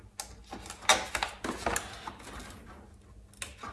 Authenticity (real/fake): real